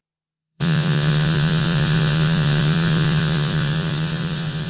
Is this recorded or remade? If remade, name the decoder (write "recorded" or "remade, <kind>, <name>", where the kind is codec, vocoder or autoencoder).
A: remade, vocoder, Vocos